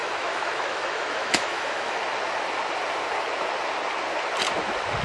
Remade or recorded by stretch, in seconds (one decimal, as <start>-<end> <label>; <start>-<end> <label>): 0.0-2.0 remade; 2.0-5.0 recorded